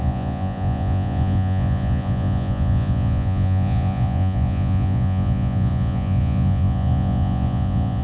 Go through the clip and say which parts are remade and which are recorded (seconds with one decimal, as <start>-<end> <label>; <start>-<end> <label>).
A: 0.0-8.0 remade